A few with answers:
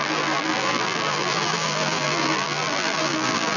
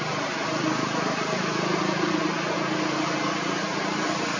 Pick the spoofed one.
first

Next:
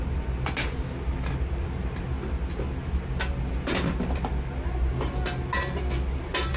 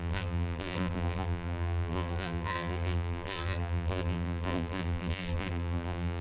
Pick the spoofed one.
second